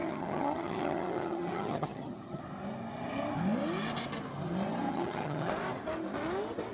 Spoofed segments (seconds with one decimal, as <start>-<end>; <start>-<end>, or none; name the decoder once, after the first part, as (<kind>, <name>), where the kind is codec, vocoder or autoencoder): 0.0-2.4 (vocoder, HiFi-GAN); 4.9-5.5